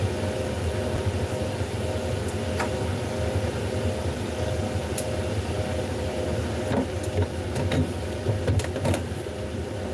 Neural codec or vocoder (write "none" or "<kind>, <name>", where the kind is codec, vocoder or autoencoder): none